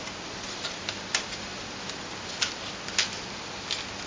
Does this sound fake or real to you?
real